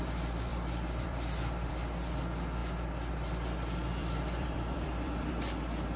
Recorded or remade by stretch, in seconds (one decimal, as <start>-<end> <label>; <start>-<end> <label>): 0.0-0.5 recorded; 0.5-1.7 remade; 1.7-4.0 recorded; 4.0-5.3 remade; 5.3-6.0 recorded